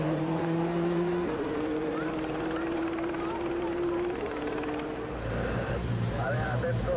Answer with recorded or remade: remade